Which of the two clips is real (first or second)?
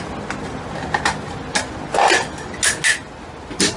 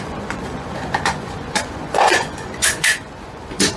first